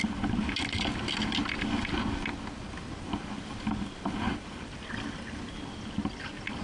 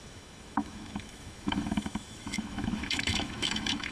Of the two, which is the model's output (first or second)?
second